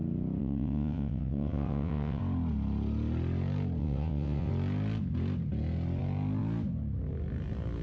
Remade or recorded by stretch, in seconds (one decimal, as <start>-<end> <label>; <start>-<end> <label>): 0.0-0.4 recorded; 0.4-2.2 remade; 2.2-3.8 recorded; 3.8-4.5 remade; 4.5-7.8 recorded